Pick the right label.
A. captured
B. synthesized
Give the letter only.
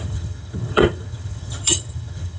B